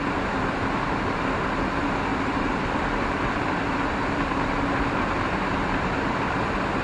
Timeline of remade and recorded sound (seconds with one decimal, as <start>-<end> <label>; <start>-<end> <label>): 0.0-2.1 recorded; 2.1-6.1 remade; 6.1-6.8 recorded